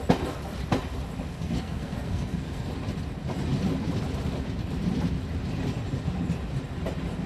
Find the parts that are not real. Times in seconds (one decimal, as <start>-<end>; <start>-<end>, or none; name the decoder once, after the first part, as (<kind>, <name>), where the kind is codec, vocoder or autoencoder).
1.3-2.7 (codec, SNAC)